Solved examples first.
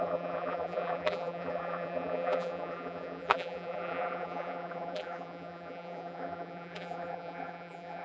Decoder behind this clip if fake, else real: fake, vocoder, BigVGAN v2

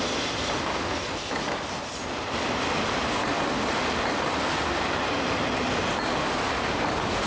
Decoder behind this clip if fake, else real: real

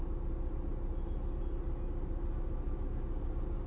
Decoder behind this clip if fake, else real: real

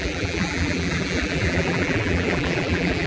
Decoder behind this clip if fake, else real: fake, vocoder, BigVGAN v2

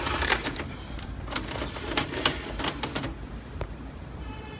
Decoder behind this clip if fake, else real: fake, vocoder, BigVGAN v2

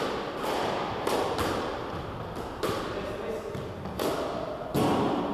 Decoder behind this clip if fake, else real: real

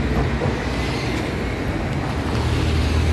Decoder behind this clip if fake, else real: real